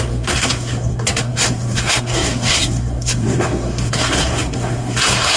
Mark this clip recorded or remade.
remade